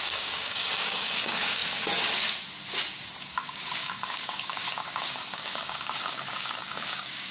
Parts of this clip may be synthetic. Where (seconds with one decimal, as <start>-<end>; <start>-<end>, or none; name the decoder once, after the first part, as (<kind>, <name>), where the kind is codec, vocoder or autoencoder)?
0.0-1.6 (codec, DAC); 3.2-7.3